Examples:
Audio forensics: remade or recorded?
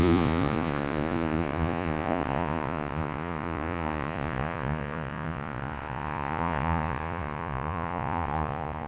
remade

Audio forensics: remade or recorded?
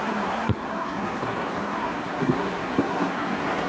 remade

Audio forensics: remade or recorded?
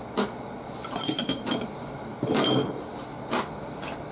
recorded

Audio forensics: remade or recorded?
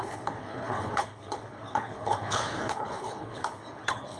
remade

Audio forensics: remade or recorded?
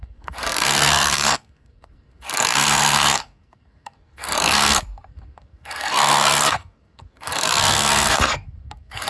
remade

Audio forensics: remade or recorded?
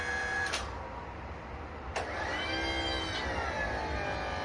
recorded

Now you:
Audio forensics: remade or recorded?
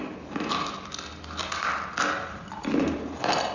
recorded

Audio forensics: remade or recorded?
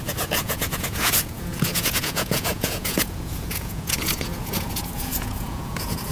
remade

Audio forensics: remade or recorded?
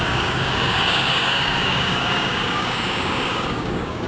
remade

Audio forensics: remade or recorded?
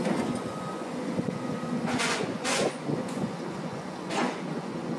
remade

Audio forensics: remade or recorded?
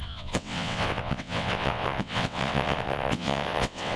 remade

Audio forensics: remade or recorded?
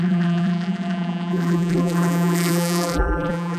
remade